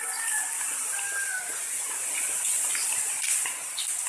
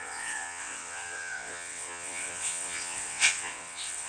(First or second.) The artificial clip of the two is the second